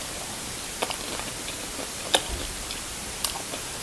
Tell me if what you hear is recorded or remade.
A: remade